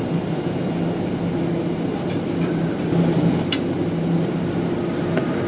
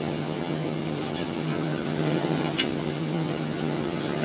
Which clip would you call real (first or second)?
first